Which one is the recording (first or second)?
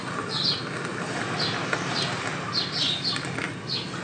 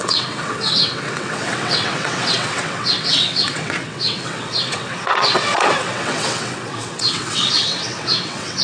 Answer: first